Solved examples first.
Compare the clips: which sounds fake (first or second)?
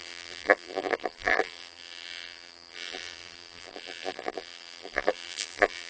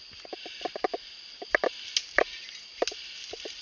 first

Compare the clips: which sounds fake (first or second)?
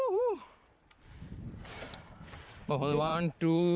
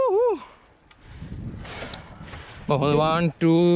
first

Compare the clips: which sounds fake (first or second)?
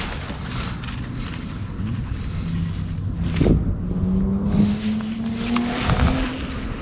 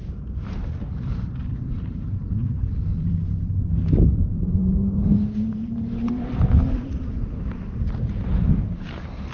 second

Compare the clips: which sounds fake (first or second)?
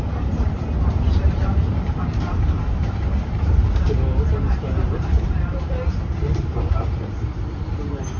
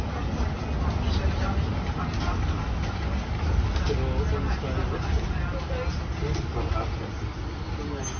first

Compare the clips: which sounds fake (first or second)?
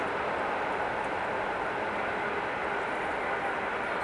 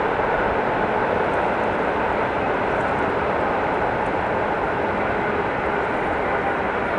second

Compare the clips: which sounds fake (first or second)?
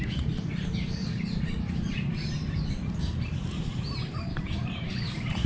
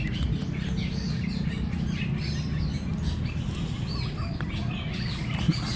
first